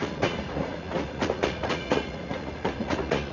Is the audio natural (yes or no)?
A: no